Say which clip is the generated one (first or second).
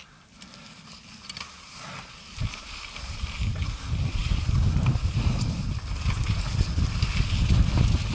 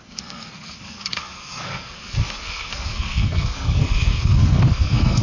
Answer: second